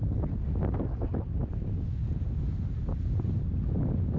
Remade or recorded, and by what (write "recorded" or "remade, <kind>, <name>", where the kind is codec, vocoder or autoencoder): recorded